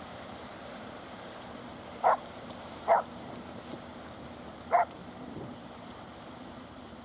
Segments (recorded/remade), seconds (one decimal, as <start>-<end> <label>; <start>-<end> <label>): 0.0-3.9 remade; 3.9-4.5 recorded; 4.5-7.0 remade